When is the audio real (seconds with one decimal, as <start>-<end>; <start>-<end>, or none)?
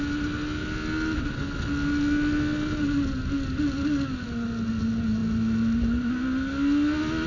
0.0-7.3